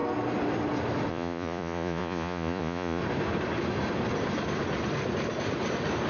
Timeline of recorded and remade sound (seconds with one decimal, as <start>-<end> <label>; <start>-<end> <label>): 0.0-1.1 recorded; 1.1-3.0 remade; 3.0-6.1 recorded